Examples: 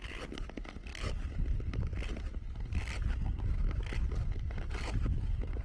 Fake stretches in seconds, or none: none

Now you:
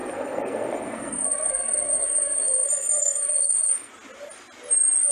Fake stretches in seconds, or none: 0.0-3.9 (codec, SNAC)

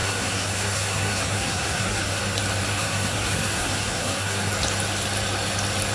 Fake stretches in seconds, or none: 0.0-2.2 (codec, SNAC); 2.8-4.5

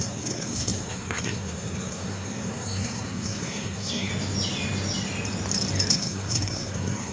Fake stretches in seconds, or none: 0.0-4.1 (codec, SNAC); 5.9-7.1

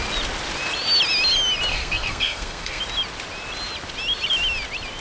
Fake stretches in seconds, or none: 1.7-2.8 (codec, SNAC)

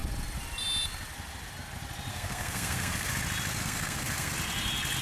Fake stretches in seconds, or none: 2.1-3.1 (codec, SNAC); 3.6-4.3

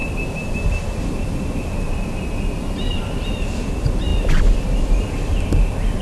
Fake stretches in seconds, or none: none

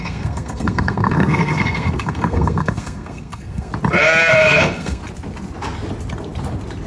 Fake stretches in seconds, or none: 0.0-3.7 (codec, SNAC); 4.3-5.0